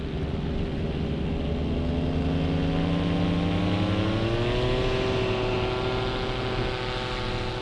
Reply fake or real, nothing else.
real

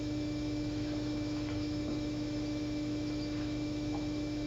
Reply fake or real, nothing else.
fake